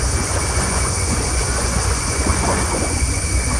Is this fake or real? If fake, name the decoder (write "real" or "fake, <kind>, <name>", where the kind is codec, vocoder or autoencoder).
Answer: fake, vocoder, Vocos